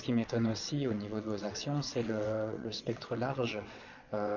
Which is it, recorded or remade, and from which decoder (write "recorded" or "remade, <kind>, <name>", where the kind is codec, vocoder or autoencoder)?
remade, vocoder, WaveNeXt